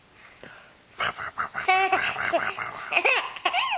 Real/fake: real